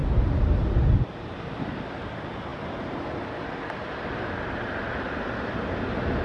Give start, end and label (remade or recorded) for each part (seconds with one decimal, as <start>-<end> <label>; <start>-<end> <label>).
0.0-6.2 recorded